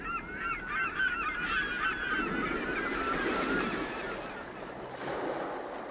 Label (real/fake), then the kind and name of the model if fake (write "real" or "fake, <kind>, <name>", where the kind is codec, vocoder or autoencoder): real